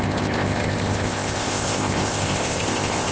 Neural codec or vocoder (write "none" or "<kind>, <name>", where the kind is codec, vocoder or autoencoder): codec, ZipCodec